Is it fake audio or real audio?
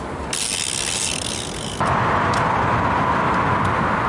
real